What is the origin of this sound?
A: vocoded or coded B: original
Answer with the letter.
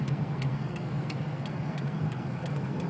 A